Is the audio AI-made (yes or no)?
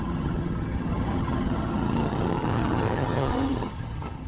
yes